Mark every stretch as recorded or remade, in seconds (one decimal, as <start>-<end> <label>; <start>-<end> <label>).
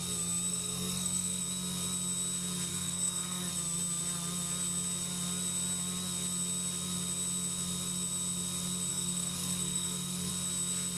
0.0-0.5 recorded; 0.5-1.4 remade; 1.4-2.7 recorded; 2.7-3.5 remade; 3.5-8.9 recorded; 8.9-10.3 remade; 10.3-11.0 recorded